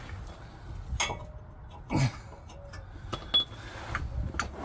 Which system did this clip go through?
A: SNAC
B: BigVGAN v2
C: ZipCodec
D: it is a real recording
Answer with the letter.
D